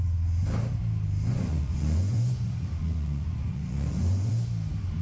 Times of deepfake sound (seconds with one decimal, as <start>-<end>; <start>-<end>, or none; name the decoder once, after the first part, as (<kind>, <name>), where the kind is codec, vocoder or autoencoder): 1.3-4.3 (vocoder, Vocos)